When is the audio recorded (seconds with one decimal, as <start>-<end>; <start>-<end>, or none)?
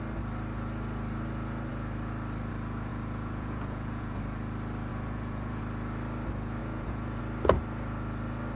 0.0-2.9; 4.2-4.9; 5.6-6.6; 7.2-8.6